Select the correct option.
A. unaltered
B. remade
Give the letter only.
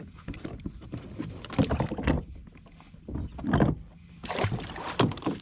A